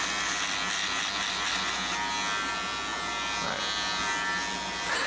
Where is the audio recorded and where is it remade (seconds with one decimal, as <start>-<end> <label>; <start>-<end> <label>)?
0.0-5.1 recorded